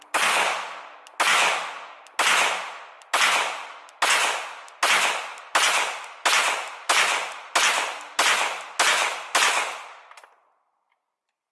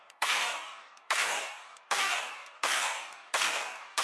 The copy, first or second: second